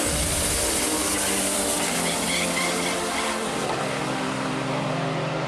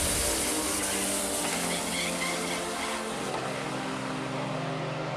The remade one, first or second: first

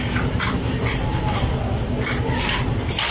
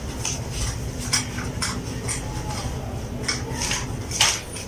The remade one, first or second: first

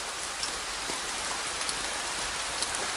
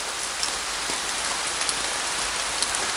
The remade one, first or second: first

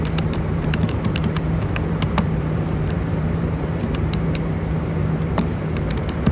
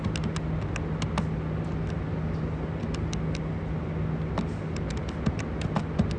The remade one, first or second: first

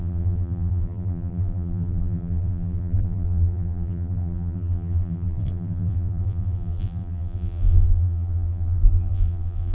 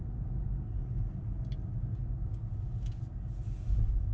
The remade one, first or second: first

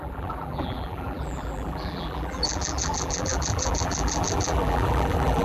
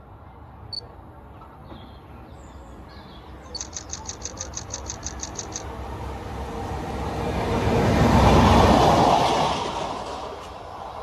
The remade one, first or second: first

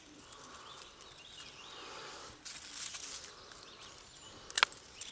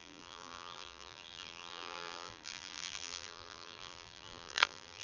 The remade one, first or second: second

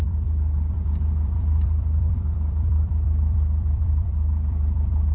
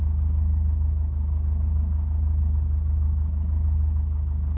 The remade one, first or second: first